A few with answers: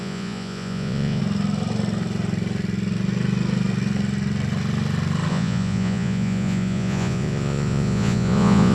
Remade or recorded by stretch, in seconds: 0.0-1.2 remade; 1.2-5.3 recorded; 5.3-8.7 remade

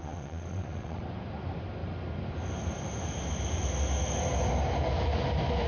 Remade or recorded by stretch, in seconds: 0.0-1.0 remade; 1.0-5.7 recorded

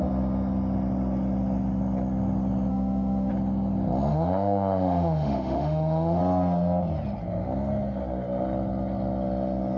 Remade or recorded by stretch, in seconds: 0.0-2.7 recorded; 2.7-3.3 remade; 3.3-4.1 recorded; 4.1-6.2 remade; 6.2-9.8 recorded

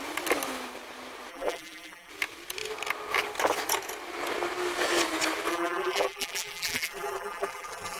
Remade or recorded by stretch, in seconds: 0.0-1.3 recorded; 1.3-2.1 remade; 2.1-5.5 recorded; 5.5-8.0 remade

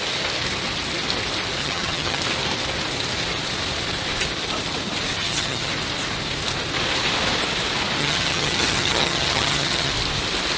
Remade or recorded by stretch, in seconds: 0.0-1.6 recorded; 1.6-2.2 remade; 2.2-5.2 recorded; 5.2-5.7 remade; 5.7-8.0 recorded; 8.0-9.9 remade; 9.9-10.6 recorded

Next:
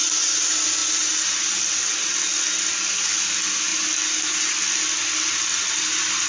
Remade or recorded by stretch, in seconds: 0.0-6.3 recorded

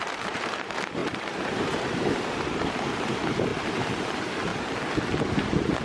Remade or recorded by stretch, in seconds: 0.0-4.5 remade; 4.5-5.8 recorded

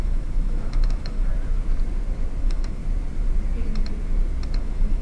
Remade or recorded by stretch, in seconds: 0.0-1.3 remade; 1.3-2.4 recorded; 2.4-2.8 remade; 2.8-4.6 recorded; 4.6-5.0 remade